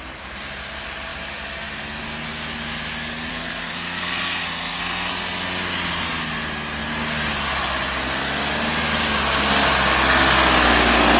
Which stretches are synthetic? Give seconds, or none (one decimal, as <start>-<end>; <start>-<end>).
3.3-5.1